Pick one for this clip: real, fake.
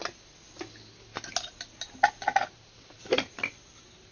real